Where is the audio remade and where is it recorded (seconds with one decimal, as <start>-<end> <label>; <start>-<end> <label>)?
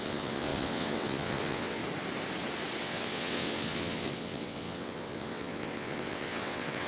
0.0-1.8 remade; 1.8-2.8 recorded; 2.8-6.9 remade